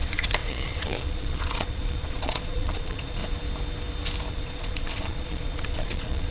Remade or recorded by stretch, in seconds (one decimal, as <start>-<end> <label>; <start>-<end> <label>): 0.0-3.2 remade; 3.2-4.3 recorded; 4.3-6.3 remade